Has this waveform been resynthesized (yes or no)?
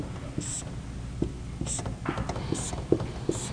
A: no